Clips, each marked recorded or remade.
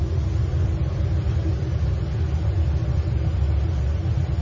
recorded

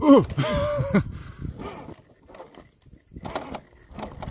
recorded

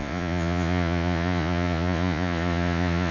remade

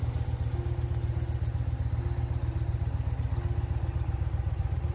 recorded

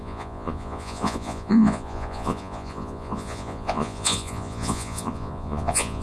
remade